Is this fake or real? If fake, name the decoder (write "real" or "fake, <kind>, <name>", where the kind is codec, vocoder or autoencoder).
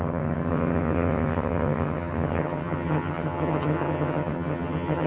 fake, vocoder, HiFi-GAN